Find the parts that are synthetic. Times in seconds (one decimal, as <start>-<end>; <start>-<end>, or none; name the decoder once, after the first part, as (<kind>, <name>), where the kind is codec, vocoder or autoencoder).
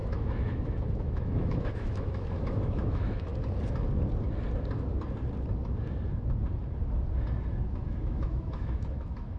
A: 0.0-3.3 (autoencoder, DAC-VAE); 7.7-9.4